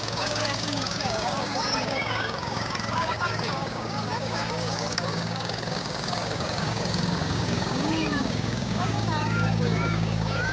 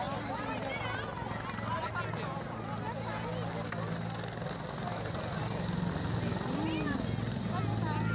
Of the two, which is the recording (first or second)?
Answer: second